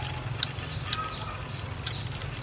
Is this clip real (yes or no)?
yes